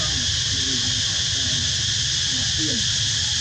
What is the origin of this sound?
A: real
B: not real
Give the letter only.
A